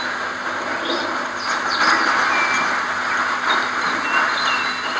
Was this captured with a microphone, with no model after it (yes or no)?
yes